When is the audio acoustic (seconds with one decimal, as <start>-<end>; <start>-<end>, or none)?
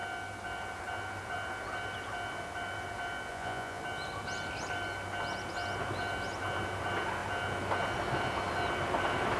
0.0-3.3; 3.8-9.4